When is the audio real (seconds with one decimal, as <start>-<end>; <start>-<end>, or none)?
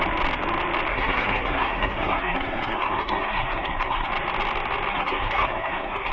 0.0-0.9; 4.1-4.9